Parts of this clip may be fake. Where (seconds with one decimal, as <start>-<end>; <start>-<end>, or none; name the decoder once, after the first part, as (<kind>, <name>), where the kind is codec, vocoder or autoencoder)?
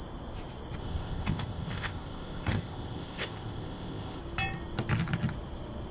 0.8-4.2 (codec, ZipCodec)